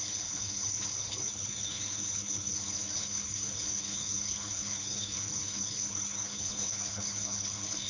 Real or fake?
fake